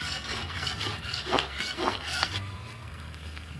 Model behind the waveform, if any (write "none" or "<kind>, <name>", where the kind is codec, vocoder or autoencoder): codec, SNAC